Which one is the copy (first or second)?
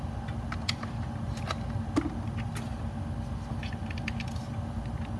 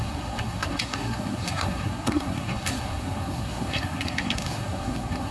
second